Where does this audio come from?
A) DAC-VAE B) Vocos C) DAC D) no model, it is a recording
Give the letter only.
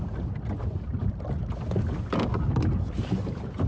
D